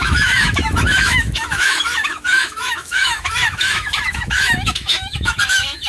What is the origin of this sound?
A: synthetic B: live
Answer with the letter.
A